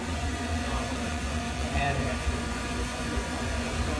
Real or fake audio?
fake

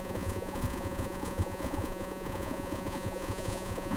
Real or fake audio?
fake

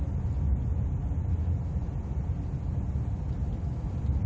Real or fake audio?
real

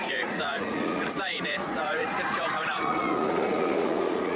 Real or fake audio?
fake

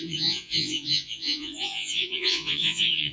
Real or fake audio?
fake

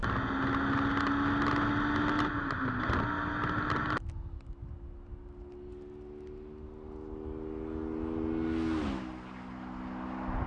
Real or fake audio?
real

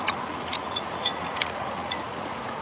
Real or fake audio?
fake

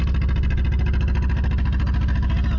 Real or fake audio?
real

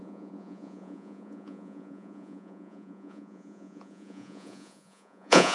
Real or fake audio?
fake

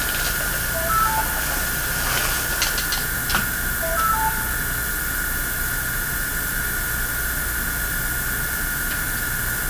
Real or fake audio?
real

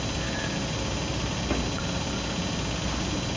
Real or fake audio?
real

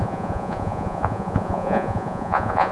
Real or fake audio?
fake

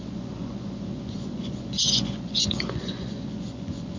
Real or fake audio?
fake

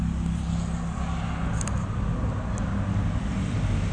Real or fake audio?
real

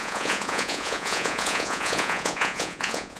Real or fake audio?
fake